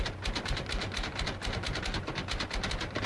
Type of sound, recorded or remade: recorded